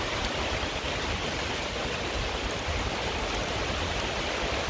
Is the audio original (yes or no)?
yes